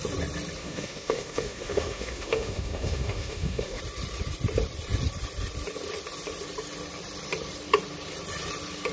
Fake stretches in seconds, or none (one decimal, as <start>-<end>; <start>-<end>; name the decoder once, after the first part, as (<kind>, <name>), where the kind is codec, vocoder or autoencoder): 0.6-3.8 (autoencoder, DAC-VAE)

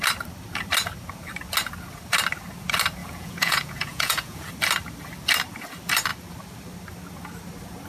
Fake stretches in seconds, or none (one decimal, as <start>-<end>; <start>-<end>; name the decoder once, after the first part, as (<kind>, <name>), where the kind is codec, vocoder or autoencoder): 3.0-4.5 (vocoder, Vocos)

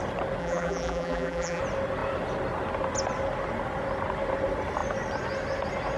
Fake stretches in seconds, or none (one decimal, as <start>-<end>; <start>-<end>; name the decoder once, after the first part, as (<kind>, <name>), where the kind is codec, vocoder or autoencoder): 0.4-1.6 (vocoder, BigVGAN v2)

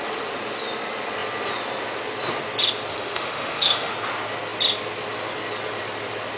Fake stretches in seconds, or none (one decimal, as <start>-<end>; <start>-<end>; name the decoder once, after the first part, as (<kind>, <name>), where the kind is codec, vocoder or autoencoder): 2.9-3.9 (autoencoder, DAC-VAE)

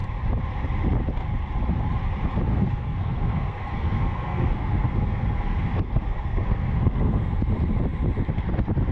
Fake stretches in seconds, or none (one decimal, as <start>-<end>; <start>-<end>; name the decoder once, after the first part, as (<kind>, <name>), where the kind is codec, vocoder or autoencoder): 2.5-7.4 (codec, SNAC)

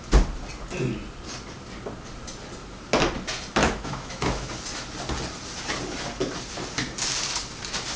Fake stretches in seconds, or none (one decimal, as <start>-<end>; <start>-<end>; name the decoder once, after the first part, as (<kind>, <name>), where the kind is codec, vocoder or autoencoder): 3.6-4.5 (autoencoder, DAC-VAE)

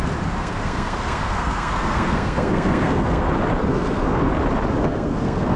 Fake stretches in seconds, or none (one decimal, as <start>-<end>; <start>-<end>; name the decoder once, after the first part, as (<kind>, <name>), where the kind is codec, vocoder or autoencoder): 0.4-3.3 (codec, SNAC); 3.7-4.3; 4.8-5.6